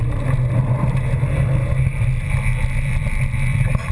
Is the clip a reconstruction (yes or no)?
no